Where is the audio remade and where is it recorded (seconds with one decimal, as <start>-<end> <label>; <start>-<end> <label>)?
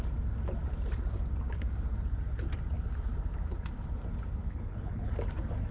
0.0-4.4 recorded; 4.4-5.1 remade; 5.1-5.7 recorded